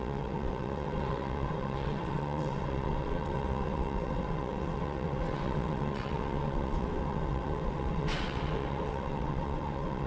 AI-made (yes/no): yes